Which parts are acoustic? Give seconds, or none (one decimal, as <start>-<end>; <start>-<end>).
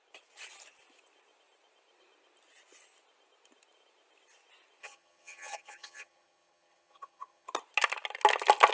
0.0-4.8; 7.5-8.7